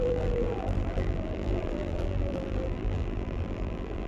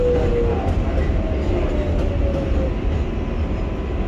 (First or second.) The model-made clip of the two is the first